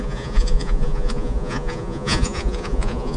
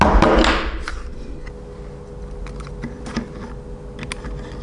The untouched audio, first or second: second